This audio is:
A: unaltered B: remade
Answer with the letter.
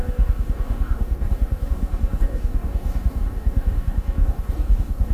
B